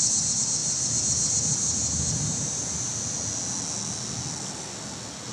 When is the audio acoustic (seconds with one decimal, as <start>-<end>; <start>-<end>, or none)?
0.0-0.6; 1.3-5.3